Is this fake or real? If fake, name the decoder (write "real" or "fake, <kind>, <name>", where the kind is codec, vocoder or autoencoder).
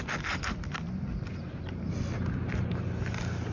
real